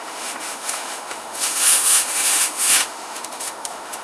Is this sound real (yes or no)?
no